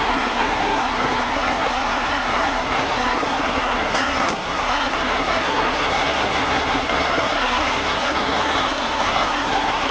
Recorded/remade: remade